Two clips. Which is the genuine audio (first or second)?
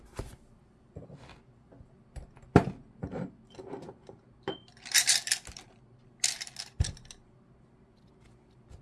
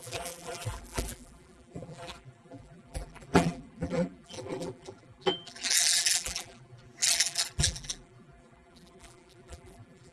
first